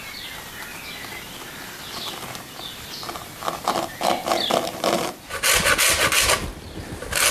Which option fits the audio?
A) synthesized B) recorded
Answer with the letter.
B